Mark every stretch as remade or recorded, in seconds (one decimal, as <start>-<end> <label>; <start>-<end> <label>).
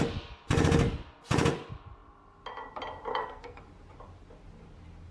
0.0-3.1 recorded; 3.1-3.6 remade; 3.6-5.1 recorded